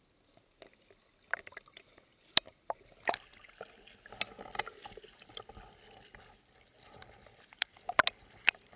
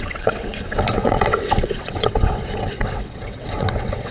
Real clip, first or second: first